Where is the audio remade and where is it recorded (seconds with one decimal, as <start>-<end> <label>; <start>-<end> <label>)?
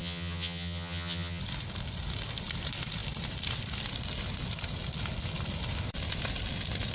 0.0-1.4 remade; 1.4-6.9 recorded